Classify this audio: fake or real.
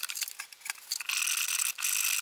real